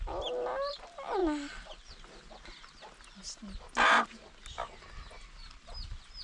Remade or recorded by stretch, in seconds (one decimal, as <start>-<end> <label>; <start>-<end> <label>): 0.0-6.2 recorded